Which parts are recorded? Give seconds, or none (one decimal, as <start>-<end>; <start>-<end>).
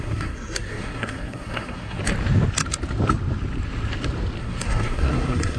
2.0-4.4